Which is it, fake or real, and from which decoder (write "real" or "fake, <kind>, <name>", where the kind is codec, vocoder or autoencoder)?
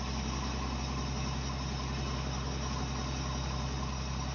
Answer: real